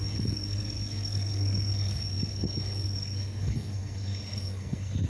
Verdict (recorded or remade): remade